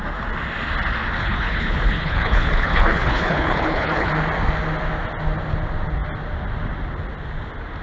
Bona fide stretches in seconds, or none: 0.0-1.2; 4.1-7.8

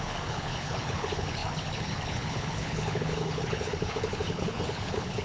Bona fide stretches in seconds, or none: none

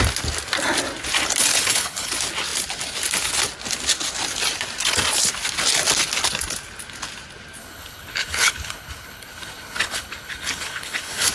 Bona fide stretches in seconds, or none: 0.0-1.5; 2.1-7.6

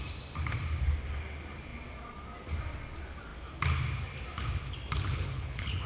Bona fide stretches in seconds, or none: 0.0-5.1

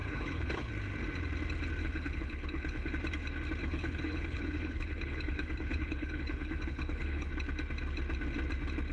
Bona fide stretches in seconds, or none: 0.7-1.8; 2.9-3.6; 7.3-8.9